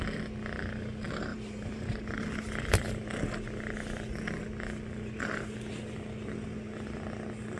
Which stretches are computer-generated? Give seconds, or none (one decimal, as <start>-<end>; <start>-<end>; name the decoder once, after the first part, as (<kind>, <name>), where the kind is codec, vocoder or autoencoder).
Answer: 1.3-2.0 (vocoder, BigVGAN v2)